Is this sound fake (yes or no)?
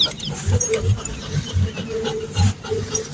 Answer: yes